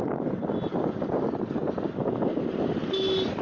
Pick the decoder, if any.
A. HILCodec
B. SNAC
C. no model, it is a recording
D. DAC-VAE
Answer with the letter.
C